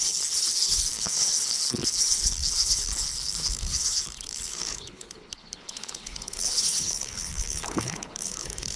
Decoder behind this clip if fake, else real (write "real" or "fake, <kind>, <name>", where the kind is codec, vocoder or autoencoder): fake, codec, HILCodec